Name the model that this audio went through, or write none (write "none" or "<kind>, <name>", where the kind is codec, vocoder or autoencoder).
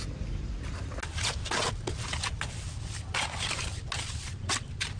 none